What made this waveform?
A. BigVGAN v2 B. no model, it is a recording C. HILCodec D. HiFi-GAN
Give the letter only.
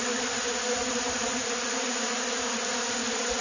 B